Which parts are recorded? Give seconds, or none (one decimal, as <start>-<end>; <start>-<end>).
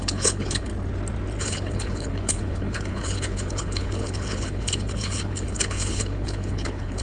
0.7-1.4